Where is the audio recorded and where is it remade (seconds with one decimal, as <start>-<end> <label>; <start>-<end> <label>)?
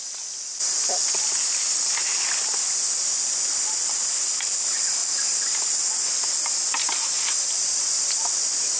0.0-8.8 recorded